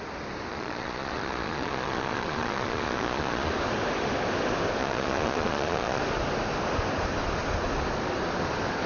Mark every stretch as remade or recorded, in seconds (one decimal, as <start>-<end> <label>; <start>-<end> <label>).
0.0-0.5 recorded; 0.5-3.5 remade; 3.5-4.8 recorded; 4.8-6.0 remade; 6.0-8.9 recorded